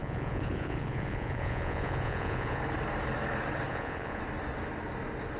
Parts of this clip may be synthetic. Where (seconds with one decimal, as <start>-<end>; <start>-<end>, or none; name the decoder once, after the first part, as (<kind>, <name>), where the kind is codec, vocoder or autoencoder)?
0.0-2.6 (vocoder, Vocos); 3.7-4.2